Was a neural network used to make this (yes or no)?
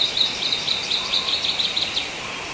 no